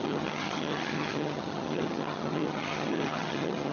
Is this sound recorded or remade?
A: remade